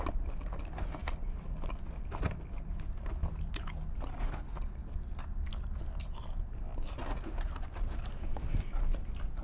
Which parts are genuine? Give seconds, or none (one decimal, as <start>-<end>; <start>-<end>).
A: 0.0-9.4